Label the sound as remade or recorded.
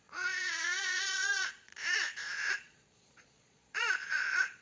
remade